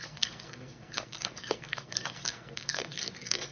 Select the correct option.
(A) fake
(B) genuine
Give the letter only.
A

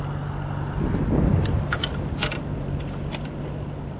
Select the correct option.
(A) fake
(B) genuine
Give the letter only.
B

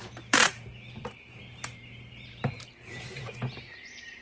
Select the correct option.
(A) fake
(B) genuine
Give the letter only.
A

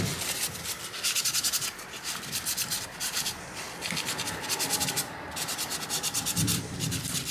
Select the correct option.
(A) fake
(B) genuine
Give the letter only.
B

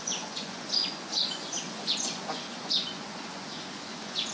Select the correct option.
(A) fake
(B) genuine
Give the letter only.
A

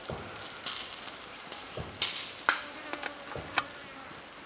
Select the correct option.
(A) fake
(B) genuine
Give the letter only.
B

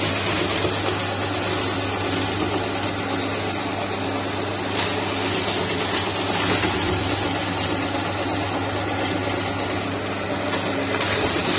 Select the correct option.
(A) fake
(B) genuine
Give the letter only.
B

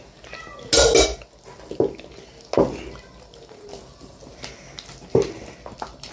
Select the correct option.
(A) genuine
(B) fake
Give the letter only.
A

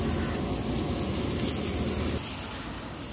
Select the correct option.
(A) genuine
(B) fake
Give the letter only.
A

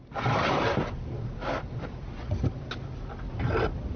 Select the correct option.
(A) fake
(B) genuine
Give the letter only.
B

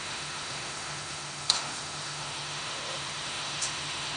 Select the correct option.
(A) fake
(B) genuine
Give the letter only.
A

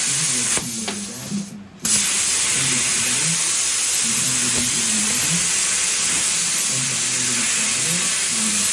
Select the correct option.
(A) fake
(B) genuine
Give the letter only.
B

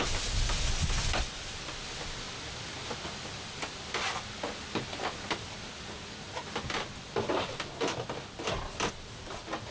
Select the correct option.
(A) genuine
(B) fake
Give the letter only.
A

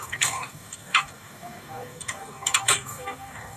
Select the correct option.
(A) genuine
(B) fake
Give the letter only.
B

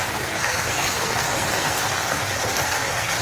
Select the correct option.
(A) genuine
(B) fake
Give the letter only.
B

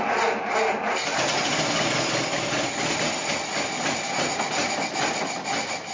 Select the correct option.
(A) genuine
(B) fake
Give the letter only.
A